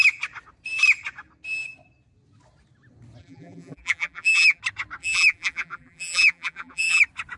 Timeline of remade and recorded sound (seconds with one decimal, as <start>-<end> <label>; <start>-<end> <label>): 0.0-3.2 recorded; 3.2-4.6 remade; 4.6-5.0 recorded; 5.0-7.0 remade; 7.0-7.4 recorded